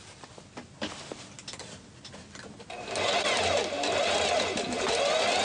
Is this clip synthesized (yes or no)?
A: no